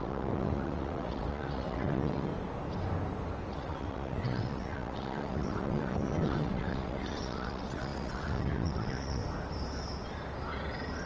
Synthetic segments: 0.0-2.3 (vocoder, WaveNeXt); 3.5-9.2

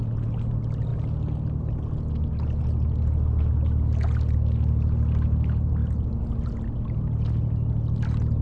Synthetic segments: none